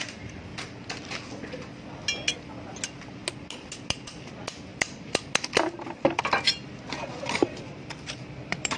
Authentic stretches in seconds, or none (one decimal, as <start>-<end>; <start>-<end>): 0.0-4.7